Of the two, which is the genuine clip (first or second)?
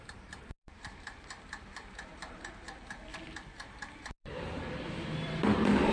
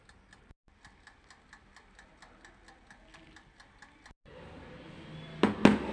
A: second